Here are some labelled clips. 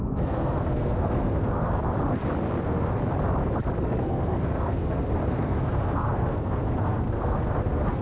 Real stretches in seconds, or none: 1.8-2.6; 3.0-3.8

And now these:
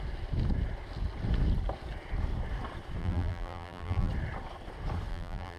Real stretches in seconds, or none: 0.0-3.0; 4.1-5.1

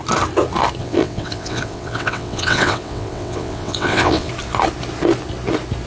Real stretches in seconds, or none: 0.0-0.8; 4.3-5.9

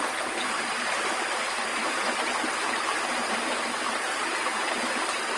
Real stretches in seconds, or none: 0.0-1.7; 4.9-5.4

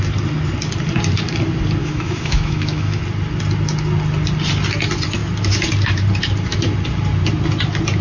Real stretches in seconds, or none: 0.0-1.8; 3.0-8.0

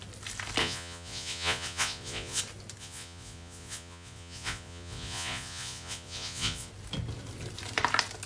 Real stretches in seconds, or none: 0.0-0.6; 2.4-2.8; 6.7-8.3

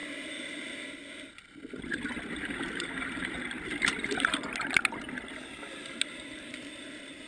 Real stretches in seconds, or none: 0.0-7.3